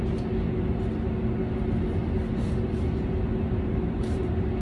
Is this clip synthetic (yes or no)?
no